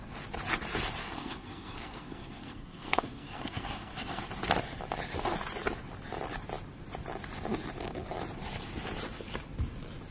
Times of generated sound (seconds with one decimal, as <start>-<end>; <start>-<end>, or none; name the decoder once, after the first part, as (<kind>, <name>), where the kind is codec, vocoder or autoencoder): 1.0-4.2 (codec, SNAC)